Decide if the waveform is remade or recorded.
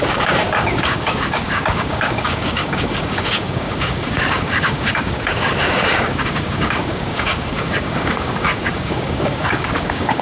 remade